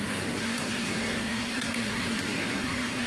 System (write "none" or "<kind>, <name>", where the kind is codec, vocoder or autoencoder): codec, SNAC